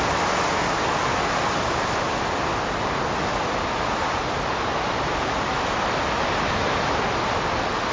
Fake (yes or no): no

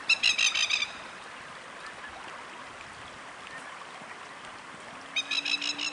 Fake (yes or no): no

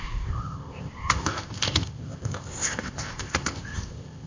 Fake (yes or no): yes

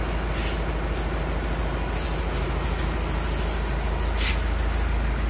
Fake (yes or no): no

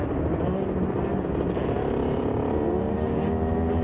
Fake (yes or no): no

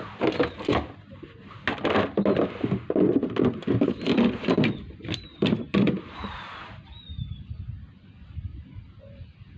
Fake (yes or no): no